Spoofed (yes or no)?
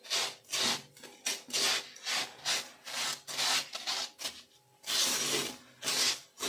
no